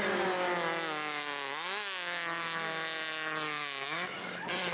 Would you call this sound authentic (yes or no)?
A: yes